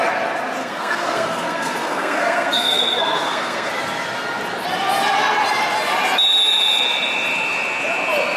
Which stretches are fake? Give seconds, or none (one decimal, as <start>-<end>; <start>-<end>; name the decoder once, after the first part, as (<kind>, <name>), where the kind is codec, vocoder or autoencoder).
0.6-3.7 (codec, SNAC)